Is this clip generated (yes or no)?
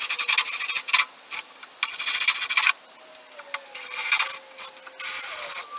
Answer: no